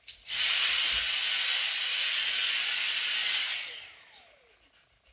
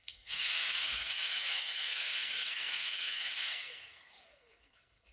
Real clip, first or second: first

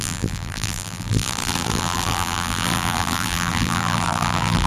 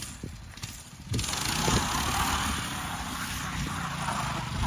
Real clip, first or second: second